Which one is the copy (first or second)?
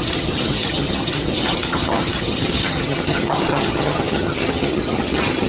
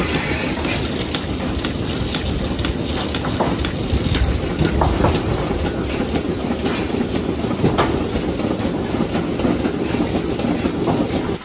first